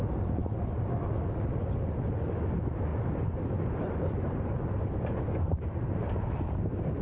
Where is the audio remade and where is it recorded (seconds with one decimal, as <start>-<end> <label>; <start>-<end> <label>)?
0.0-2.9 recorded; 2.9-6.3 remade; 6.3-7.0 recorded